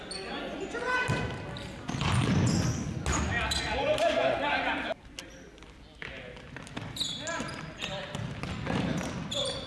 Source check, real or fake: real